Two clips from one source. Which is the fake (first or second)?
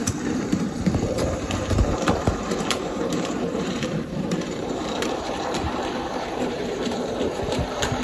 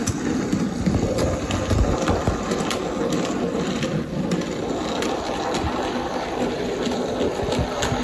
first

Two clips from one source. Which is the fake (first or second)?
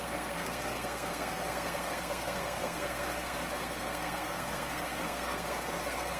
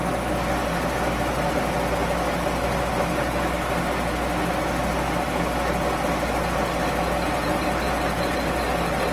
first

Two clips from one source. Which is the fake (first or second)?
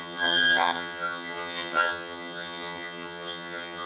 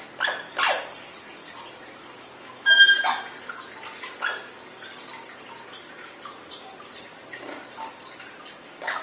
first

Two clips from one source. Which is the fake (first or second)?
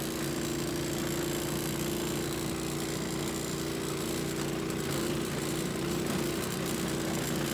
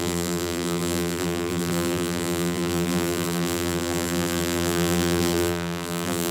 second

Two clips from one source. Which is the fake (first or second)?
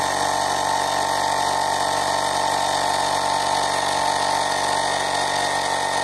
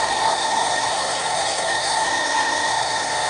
second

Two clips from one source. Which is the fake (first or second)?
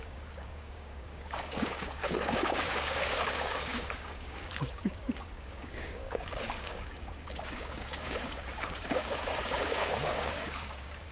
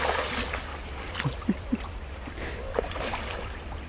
first